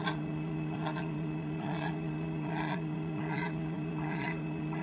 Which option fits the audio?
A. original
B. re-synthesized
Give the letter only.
B